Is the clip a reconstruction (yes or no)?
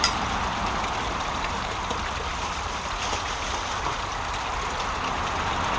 no